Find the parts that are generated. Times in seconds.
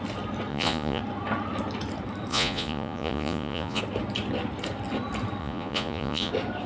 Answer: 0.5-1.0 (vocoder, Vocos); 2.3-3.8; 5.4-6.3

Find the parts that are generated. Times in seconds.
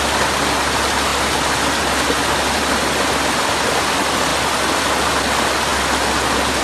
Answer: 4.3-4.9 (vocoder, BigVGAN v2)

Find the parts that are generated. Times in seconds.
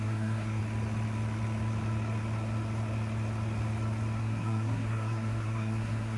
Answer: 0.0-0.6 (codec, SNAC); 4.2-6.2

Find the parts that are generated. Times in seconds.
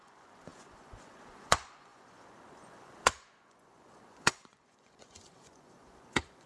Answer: 0.0-6.5 (vocoder, Vocos)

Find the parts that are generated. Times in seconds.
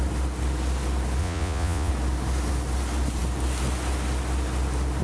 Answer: 1.2-1.9 (vocoder, Vocos)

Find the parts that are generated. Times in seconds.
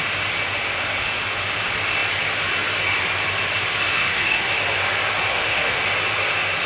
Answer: 3.9-4.5 (autoencoder, DAC-VAE); 5.3-5.8